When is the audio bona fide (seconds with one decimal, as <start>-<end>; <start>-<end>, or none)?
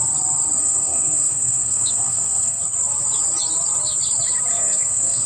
0.0-0.6; 2.6-4.5